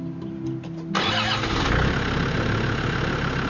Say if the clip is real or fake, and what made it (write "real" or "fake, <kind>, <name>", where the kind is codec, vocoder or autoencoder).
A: real